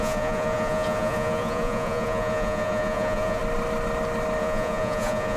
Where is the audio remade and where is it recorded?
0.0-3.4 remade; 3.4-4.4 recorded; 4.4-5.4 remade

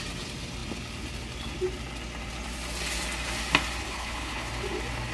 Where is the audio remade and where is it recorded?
0.0-3.8 recorded; 3.8-4.5 remade; 4.5-5.1 recorded